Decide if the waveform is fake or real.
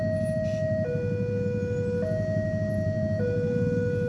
real